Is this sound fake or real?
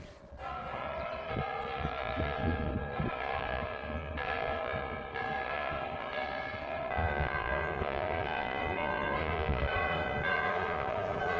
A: fake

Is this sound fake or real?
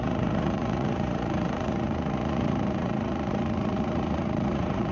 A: fake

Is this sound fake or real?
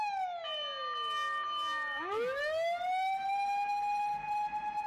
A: real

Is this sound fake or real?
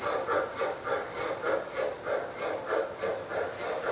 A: real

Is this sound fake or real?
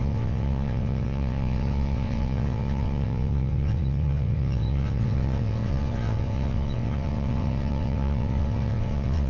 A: fake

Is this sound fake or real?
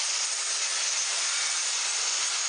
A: fake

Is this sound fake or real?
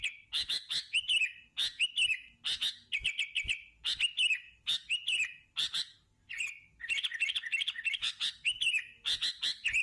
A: real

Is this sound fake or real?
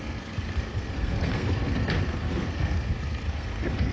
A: fake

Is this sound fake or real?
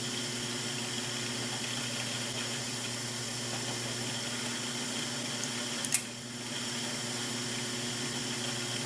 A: real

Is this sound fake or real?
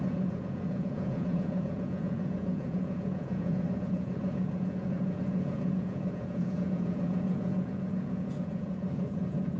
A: fake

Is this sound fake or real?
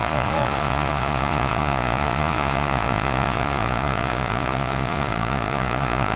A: fake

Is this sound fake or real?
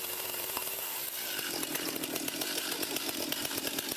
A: fake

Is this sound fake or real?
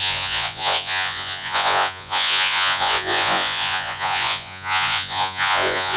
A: fake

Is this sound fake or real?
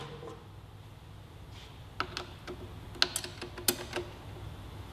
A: real